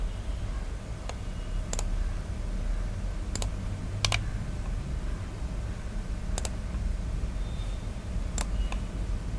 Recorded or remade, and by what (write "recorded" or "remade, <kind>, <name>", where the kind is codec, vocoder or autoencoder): recorded